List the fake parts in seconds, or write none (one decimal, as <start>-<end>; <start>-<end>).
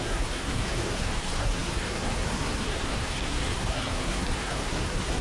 0.0-5.2